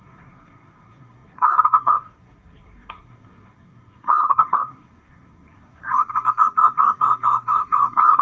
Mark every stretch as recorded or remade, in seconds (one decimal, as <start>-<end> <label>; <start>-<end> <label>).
0.0-8.2 remade